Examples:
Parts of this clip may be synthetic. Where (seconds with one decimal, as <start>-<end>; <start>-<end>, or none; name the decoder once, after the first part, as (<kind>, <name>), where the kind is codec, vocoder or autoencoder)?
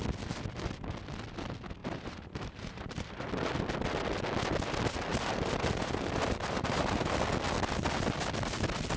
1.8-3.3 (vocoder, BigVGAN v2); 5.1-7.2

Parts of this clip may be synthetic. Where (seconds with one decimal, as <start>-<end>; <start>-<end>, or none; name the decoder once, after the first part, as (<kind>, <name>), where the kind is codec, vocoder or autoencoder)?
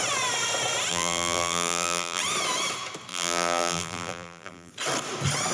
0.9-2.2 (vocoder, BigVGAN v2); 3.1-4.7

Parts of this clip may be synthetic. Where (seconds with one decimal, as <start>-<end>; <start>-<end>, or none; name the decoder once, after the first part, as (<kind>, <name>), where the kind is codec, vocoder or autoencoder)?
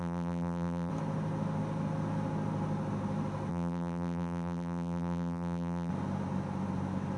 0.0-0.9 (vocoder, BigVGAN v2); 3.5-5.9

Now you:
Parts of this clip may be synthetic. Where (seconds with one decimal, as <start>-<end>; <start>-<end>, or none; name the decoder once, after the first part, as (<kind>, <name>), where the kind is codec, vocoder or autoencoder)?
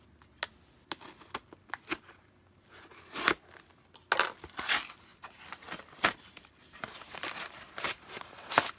5.1-7.9 (vocoder, BigVGAN v2)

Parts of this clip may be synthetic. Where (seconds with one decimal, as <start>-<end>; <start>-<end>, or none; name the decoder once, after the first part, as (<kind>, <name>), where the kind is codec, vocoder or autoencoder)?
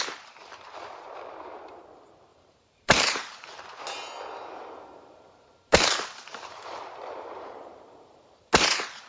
2.3-3.6 (vocoder, BigVGAN v2); 4.6-8.5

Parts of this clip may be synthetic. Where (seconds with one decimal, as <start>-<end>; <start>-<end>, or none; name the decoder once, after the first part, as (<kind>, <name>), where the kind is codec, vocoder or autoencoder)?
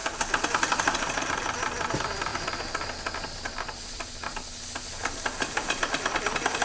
0.0-1.2 (vocoder, BigVGAN v2); 2.3-6.6